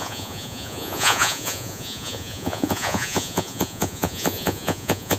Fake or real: fake